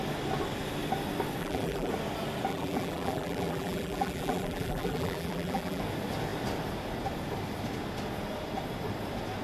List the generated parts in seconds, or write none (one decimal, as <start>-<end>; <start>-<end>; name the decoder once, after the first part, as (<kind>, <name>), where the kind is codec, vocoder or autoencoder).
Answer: 1.4-1.9 (vocoder, BigVGAN v2); 2.5-5.8